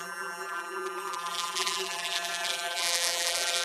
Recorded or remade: remade